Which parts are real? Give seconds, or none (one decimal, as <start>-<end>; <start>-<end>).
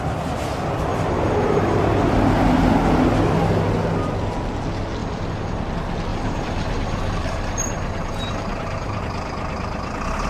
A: 0.0-0.9; 1.8-5.0; 5.6-6.1; 9.0-10.3